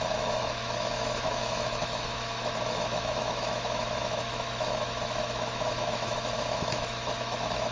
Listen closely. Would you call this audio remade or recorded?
remade